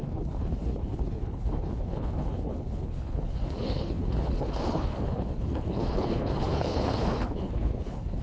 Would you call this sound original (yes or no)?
no